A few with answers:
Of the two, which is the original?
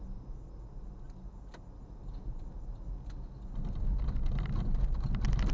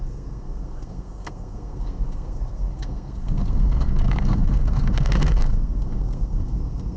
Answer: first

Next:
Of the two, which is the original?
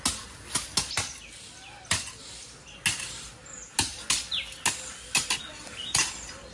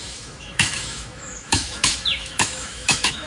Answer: first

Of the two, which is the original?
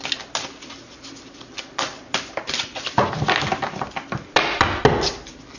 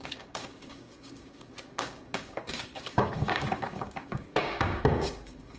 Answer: first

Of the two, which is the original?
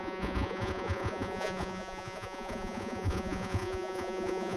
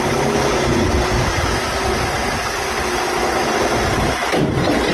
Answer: second